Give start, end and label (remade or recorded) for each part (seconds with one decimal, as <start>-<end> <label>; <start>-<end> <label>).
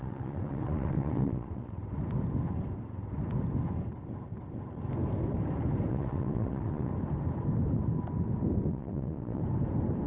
0.0-1.8 remade; 1.8-5.9 recorded; 5.9-6.9 remade; 6.9-8.7 recorded; 8.7-9.4 remade; 9.4-10.1 recorded